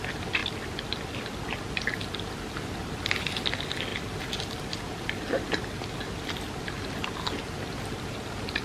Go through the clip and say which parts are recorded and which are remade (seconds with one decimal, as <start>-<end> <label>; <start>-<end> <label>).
0.0-0.4 recorded; 0.4-1.7 remade; 1.7-2.8 recorded; 2.8-3.5 remade; 3.5-3.9 recorded; 3.9-5.9 remade; 5.9-8.6 recorded

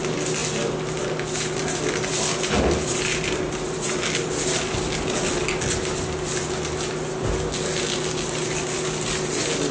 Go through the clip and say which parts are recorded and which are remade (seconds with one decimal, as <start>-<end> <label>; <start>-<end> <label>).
0.0-9.7 recorded